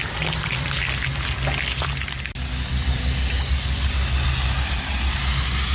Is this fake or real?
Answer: real